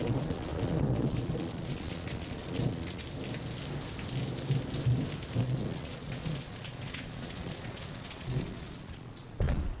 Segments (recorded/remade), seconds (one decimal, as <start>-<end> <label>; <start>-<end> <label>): 0.0-3.0 remade; 3.0-5.4 recorded; 5.4-9.8 remade